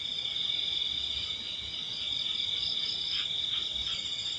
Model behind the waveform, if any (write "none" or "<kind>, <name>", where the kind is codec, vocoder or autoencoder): none